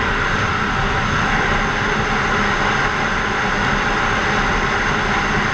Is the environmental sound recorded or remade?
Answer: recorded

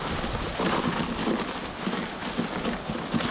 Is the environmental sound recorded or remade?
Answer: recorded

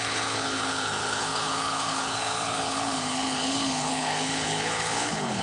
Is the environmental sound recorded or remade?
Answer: remade